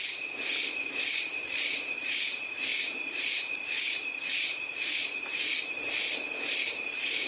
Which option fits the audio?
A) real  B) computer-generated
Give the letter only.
B